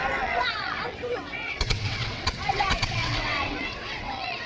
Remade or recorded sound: remade